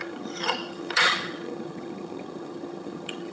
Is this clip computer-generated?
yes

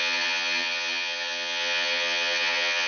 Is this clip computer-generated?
yes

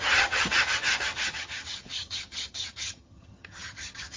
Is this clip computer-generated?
yes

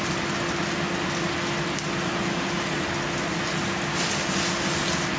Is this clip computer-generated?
no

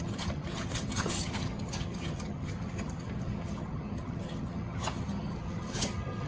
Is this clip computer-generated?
yes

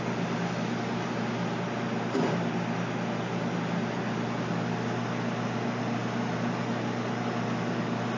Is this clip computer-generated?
no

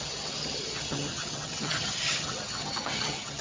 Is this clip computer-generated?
yes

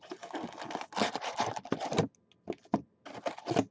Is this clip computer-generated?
no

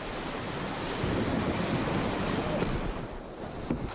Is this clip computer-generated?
no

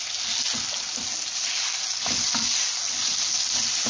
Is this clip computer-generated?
no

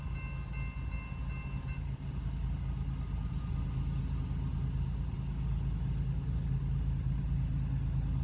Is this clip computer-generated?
no